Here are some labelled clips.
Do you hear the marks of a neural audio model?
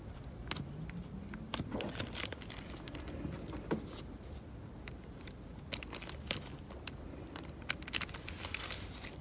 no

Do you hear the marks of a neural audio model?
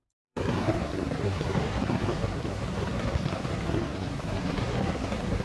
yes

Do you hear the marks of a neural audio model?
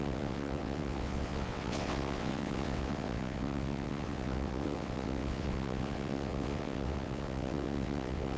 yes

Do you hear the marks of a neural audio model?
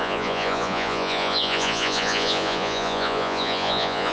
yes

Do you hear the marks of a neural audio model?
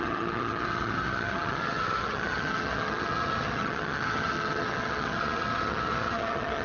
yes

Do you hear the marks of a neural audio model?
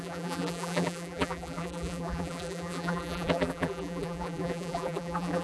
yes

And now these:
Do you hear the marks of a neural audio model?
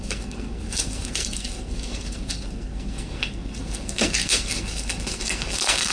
yes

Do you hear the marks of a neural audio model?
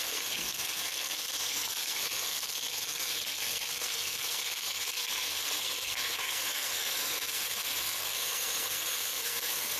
yes